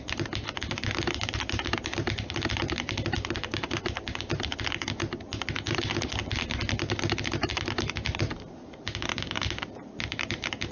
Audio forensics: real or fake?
real